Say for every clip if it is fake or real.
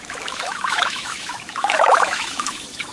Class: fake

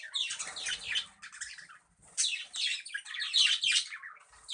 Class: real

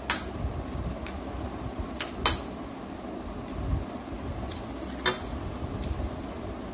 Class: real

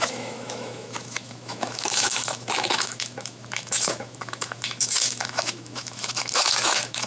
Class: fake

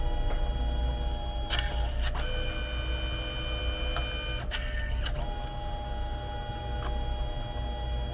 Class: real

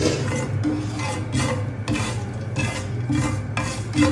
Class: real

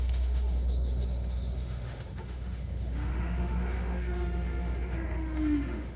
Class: fake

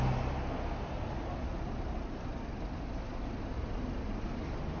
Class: real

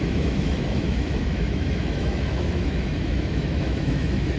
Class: fake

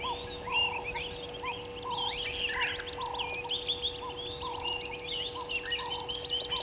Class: real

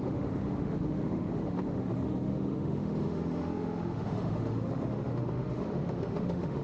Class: fake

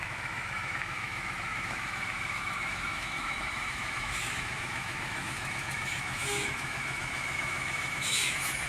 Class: fake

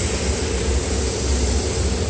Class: real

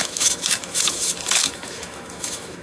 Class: fake